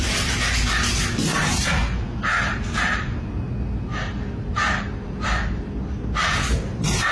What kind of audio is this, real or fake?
real